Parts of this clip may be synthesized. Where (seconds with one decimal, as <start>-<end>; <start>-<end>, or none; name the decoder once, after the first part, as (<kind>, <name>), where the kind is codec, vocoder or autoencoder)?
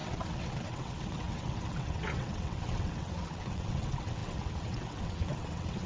0.0-5.9 (vocoder, WaveNeXt)